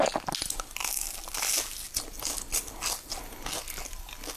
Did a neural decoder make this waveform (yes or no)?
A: no